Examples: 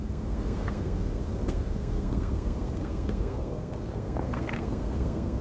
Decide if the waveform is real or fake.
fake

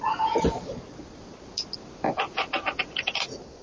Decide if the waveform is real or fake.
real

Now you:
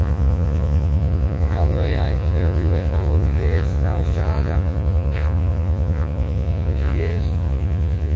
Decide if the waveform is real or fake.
fake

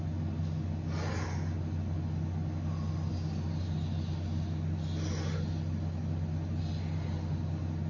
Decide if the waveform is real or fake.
real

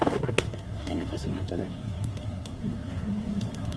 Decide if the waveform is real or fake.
fake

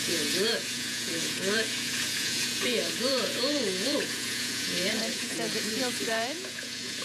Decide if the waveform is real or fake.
fake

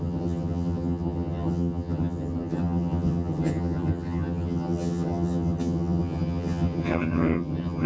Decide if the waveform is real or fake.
fake